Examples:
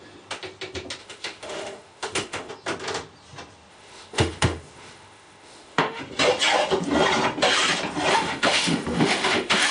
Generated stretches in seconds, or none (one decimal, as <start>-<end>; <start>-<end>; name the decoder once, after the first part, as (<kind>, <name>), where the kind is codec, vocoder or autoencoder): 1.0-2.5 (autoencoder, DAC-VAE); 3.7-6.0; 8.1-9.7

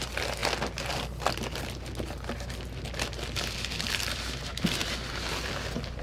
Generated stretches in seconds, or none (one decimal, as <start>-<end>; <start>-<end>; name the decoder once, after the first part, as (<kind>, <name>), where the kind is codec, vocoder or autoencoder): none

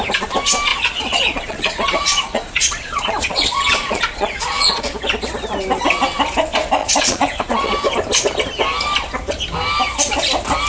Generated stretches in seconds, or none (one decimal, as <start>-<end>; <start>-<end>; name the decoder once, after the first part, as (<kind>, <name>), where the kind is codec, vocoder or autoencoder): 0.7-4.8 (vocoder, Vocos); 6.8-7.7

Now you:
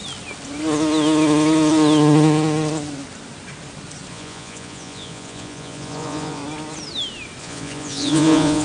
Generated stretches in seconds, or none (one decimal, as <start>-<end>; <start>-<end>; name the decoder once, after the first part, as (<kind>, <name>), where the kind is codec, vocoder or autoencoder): 4.1-6.4 (vocoder, Vocos); 7.4-8.6

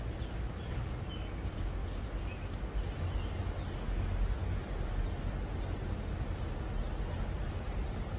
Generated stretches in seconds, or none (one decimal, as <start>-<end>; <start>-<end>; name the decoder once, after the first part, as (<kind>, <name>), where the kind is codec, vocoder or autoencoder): none